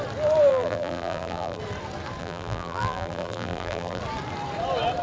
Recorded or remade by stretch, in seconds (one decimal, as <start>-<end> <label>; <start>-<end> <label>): 0.0-0.5 recorded; 0.5-1.6 remade; 1.6-2.2 recorded; 2.2-4.0 remade; 4.0-5.0 recorded